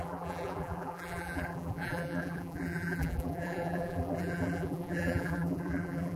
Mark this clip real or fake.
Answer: fake